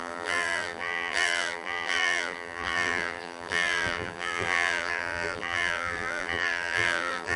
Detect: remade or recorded remade